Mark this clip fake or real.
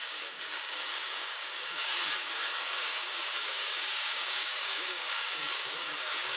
fake